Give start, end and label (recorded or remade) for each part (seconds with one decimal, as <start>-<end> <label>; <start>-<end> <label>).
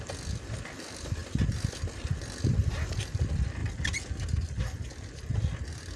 0.0-6.0 recorded